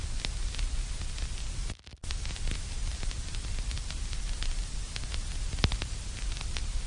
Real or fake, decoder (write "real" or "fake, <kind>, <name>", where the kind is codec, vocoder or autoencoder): real